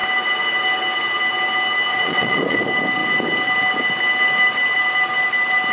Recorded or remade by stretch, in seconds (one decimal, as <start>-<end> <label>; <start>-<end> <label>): 0.0-1.9 recorded; 1.9-2.6 remade; 2.6-5.7 recorded